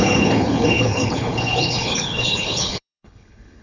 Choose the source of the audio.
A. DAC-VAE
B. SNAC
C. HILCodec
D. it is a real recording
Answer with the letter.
C